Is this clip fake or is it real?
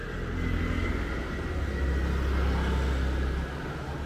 real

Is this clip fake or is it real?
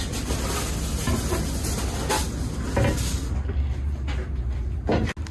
real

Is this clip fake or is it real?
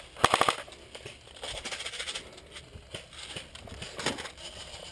real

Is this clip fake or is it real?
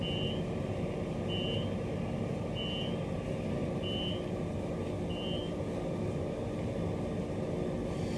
real